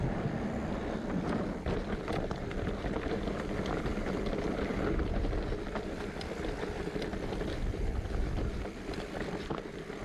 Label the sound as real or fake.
real